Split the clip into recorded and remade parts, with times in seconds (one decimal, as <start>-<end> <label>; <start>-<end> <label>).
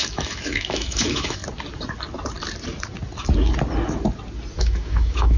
0.0-1.4 remade; 1.4-4.6 recorded; 4.6-5.4 remade